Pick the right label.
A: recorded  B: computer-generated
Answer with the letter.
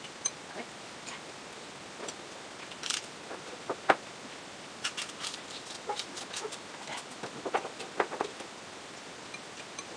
A